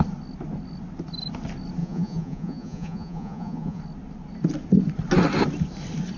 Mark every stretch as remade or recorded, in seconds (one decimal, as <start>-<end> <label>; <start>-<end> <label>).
0.0-1.8 recorded; 1.8-3.8 remade; 3.8-6.2 recorded